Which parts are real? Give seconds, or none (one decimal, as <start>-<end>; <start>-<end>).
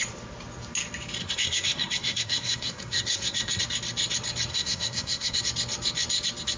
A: 0.0-1.2; 3.6-4.5; 5.4-6.6